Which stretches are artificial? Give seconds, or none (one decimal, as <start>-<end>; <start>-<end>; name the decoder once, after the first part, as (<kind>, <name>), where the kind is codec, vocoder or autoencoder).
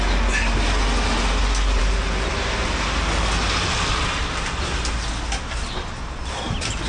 none